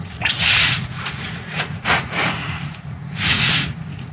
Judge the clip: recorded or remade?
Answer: remade